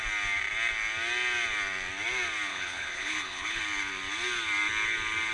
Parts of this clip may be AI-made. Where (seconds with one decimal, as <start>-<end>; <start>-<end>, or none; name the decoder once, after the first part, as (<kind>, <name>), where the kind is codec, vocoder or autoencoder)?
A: 2.5-3.6 (codec, HILCodec)